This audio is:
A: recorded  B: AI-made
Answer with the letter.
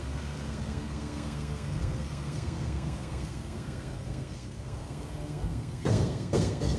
B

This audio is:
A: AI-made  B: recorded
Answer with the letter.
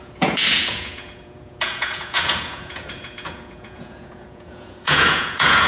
A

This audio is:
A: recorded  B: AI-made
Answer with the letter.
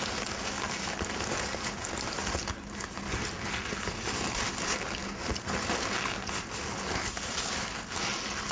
A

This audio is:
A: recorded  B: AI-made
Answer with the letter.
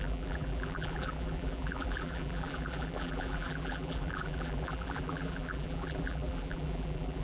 B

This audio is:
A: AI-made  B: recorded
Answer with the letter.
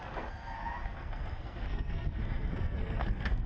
A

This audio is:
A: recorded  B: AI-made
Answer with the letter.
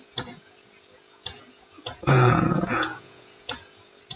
B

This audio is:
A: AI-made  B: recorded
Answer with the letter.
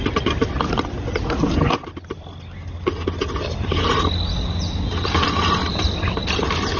B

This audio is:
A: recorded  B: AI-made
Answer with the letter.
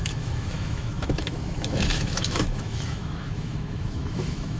B